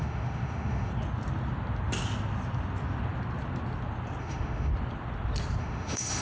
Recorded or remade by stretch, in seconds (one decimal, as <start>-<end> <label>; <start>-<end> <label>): 0.0-0.9 remade; 0.9-4.2 recorded; 4.2-4.7 remade; 4.7-5.6 recorded; 5.6-6.2 remade